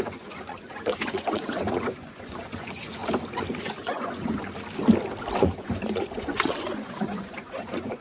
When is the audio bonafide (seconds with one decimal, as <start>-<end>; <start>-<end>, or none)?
3.0-3.6; 4.4-5.4